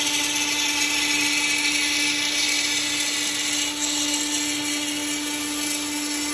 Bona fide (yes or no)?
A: yes